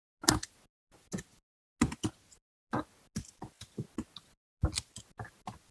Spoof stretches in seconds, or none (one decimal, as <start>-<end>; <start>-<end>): none